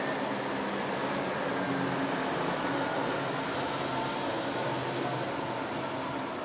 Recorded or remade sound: recorded